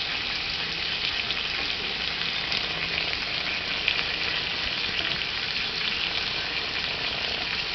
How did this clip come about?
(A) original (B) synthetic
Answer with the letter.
A